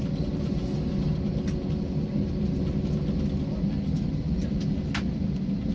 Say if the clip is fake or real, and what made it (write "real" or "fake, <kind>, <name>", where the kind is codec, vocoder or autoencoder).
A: real